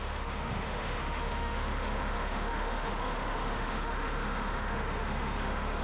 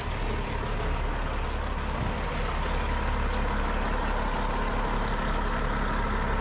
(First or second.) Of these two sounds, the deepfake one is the first